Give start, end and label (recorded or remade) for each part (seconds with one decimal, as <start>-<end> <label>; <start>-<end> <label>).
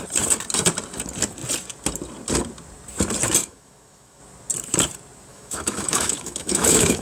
0.0-3.4 recorded; 3.4-4.2 remade; 4.2-5.3 recorded; 5.3-7.0 remade